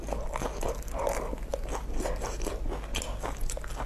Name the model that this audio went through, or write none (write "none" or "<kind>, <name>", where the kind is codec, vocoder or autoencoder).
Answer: none